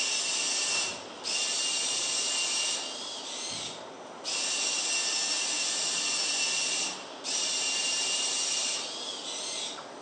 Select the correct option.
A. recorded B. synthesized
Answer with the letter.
A